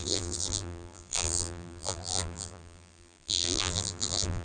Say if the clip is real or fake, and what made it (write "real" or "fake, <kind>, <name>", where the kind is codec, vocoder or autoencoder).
fake, vocoder, BigVGAN v2